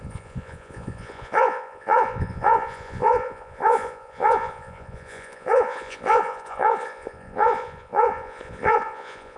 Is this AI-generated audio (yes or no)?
yes